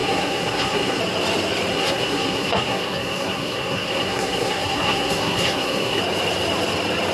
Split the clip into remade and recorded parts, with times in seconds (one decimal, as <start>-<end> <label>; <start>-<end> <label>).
0.0-1.0 remade; 1.0-1.7 recorded; 1.7-6.0 remade; 6.0-7.1 recorded